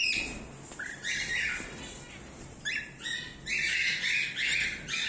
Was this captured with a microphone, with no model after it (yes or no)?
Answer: yes